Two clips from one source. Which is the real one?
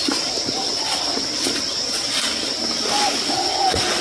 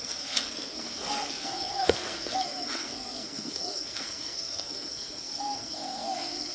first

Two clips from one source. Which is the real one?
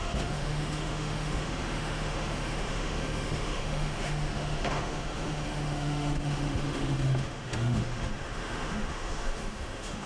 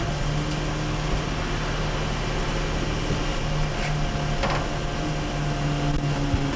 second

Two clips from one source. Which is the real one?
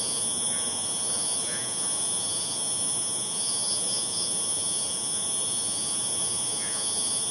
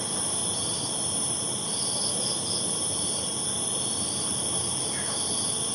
second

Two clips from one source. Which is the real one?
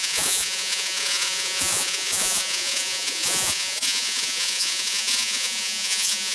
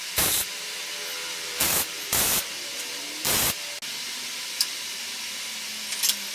second